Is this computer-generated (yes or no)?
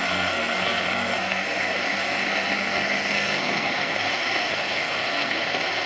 yes